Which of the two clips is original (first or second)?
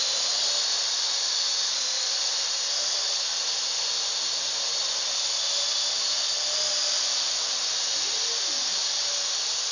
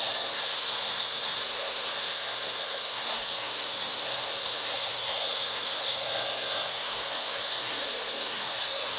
first